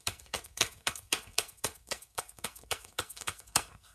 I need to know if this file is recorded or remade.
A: remade